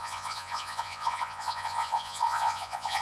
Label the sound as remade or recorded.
remade